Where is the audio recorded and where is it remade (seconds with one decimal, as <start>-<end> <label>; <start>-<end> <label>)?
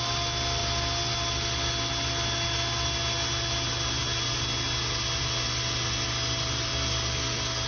0.0-7.7 recorded